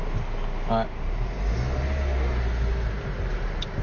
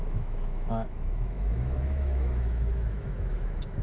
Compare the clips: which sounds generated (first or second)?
second